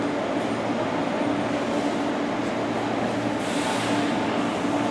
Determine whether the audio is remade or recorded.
recorded